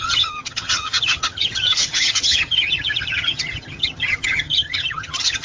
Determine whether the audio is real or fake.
fake